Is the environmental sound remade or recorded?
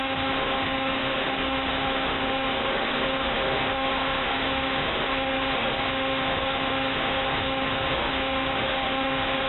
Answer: remade